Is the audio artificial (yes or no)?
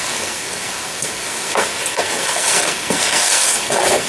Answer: yes